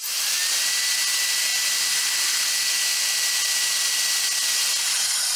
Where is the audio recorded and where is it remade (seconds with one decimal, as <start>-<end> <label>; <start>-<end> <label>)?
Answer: 0.0-5.4 recorded